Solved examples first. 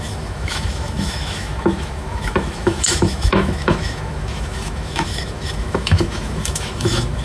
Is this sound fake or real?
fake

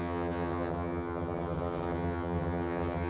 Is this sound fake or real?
fake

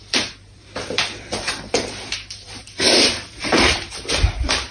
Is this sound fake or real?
fake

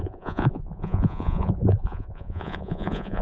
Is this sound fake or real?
fake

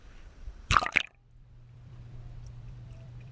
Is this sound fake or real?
fake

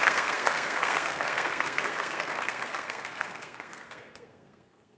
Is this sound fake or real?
fake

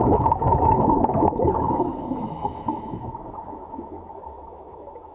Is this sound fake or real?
fake